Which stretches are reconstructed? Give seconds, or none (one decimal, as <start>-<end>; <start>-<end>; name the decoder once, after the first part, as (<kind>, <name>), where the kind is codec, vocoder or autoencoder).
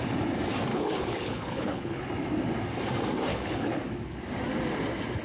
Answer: 0.7-2.1 (codec, HILCodec); 3.3-3.8